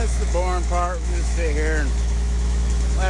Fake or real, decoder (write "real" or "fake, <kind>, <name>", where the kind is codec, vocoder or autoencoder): fake, autoencoder, DAC-VAE